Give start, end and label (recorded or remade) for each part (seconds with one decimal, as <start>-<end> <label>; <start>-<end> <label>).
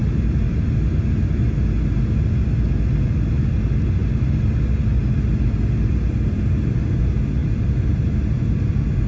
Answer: 0.0-0.6 remade; 0.6-7.4 recorded; 7.4-8.6 remade; 8.6-9.1 recorded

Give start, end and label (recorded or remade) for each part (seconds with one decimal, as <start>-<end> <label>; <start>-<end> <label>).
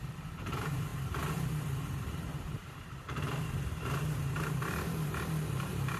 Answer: 0.0-6.0 remade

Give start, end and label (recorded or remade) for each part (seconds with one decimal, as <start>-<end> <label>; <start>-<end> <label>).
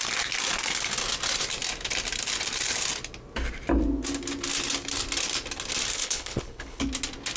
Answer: 0.0-5.9 recorded; 5.9-6.8 remade; 6.8-7.4 recorded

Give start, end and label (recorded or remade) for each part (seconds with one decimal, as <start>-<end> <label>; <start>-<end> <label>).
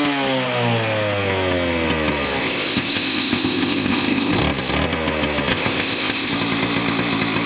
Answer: 0.0-2.4 recorded; 2.4-4.3 remade; 4.3-5.5 recorded; 5.5-6.3 remade; 6.3-7.5 recorded